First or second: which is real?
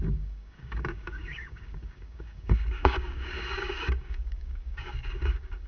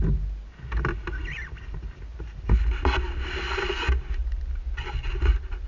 second